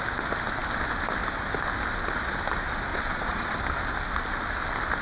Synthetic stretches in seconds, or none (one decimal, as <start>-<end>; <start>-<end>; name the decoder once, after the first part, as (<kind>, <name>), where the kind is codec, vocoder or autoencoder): 2.9-3.6 (vocoder, Vocos)